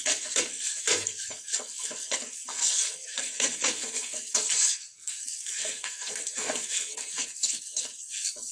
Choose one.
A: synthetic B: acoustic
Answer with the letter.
A